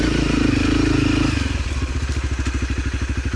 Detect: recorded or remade recorded